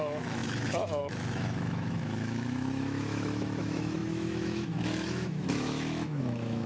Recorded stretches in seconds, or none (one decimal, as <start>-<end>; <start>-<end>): none